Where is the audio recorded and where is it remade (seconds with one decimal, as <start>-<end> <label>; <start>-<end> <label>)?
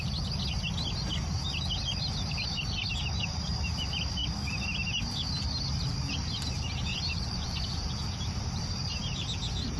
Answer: 0.0-6.9 recorded; 6.9-7.6 remade; 7.6-9.8 recorded